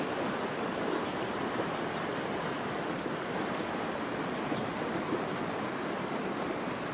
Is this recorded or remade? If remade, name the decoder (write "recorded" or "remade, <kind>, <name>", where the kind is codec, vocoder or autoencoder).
recorded